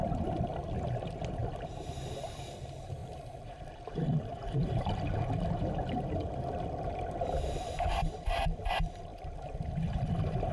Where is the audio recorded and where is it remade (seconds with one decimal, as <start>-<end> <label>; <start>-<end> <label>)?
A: 0.0-3.0 recorded; 3.0-3.6 remade; 3.6-4.3 recorded; 4.3-8.7 remade; 8.7-9.1 recorded; 9.1-9.6 remade; 9.6-10.5 recorded